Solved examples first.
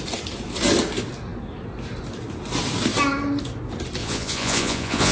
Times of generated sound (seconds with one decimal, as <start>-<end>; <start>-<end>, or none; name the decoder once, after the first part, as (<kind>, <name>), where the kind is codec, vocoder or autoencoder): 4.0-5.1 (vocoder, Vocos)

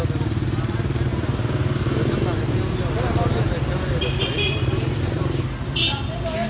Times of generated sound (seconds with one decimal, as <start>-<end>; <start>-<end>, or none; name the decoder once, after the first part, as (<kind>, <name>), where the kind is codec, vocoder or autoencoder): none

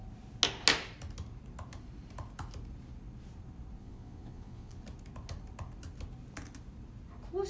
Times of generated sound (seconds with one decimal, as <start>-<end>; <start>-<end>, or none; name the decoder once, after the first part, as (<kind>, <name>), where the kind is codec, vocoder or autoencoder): 3.8-4.8 (vocoder, Vocos)

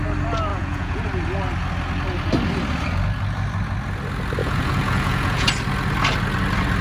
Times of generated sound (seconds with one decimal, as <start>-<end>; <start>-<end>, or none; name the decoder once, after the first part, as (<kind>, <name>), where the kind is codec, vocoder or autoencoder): 0.5-1.0 (vocoder, Vocos); 4.4-5.5

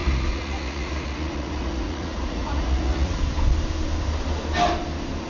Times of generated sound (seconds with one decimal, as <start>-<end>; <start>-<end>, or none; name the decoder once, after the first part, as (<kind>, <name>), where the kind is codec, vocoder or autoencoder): 0.0-3.2 (vocoder, Vocos)

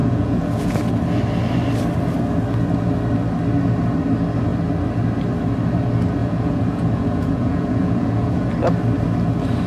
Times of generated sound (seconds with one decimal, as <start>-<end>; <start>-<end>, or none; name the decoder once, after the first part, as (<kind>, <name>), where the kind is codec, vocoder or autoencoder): 0.0-0.8 (vocoder, Vocos); 6.2-8.5

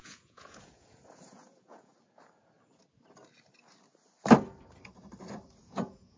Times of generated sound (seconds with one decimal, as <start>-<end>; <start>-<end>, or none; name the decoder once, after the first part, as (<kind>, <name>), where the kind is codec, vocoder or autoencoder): 0.0-1.9 (vocoder, Vocos); 5.6-6.2

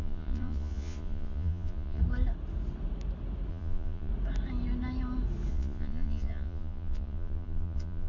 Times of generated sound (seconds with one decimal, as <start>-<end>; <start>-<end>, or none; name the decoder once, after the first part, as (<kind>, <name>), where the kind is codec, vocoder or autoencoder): 0.0-2.0 (vocoder, Vocos); 3.5-4.1; 5.5-8.1